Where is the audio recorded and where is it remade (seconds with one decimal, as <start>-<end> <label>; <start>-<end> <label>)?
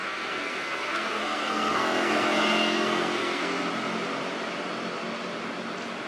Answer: 0.0-3.7 remade; 3.7-6.1 recorded